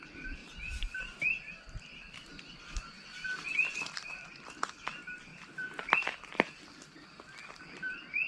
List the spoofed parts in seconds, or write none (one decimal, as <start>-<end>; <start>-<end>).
0.0-2.3; 3.9-8.3